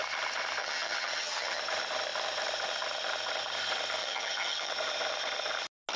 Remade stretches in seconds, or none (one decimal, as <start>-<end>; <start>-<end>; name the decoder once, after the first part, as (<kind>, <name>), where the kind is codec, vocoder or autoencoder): 0.6-1.6 (vocoder, HiFi-GAN); 4.0-4.7